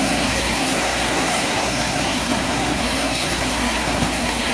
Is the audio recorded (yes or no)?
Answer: no